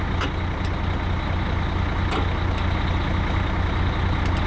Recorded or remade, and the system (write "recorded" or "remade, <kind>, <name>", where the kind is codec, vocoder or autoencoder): recorded